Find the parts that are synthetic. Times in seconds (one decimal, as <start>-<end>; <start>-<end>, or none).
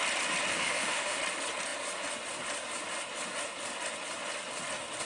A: 0.5-1.2